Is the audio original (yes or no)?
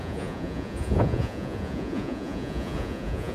no